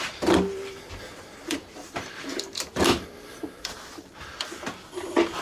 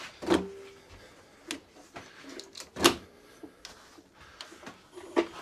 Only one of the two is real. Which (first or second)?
second